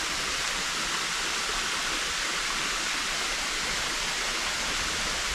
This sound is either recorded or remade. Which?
recorded